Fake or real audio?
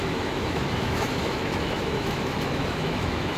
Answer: fake